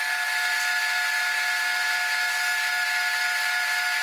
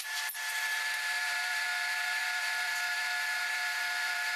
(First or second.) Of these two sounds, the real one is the first